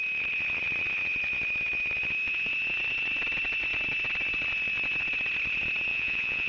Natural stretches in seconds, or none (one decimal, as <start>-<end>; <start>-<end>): 0.0-5.9